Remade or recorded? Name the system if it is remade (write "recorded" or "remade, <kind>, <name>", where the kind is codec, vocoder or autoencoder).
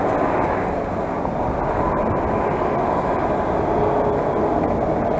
recorded